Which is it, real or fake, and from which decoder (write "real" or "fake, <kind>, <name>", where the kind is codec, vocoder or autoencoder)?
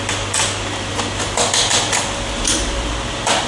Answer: real